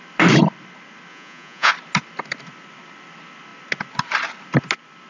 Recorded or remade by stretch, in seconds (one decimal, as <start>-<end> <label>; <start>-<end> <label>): 0.0-1.1 recorded; 1.1-1.7 remade; 1.7-5.1 recorded